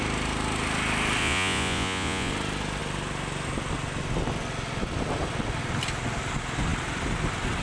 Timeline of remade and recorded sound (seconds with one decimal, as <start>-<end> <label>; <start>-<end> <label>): 0.0-1.2 recorded; 1.2-2.3 remade; 2.3-7.6 recorded